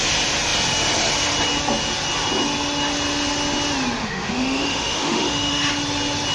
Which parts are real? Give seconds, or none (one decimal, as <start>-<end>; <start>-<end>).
0.0-4.0; 5.7-6.3